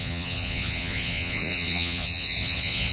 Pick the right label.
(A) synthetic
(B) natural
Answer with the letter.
A